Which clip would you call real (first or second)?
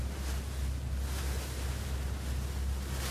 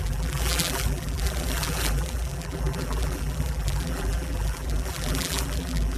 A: first